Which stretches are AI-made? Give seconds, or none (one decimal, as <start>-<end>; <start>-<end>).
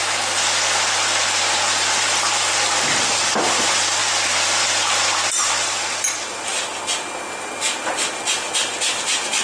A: 1.6-4.0; 5.3-9.4